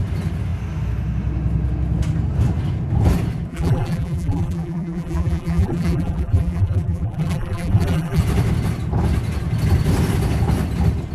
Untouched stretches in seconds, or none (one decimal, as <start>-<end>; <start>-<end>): 0.0-3.5; 8.2-11.1